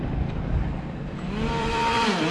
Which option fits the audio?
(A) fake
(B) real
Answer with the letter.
A